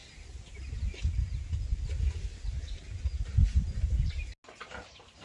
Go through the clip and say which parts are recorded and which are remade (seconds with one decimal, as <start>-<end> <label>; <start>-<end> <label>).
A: 0.0-5.2 recorded